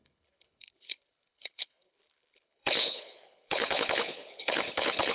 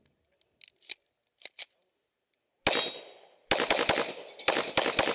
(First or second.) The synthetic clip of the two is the first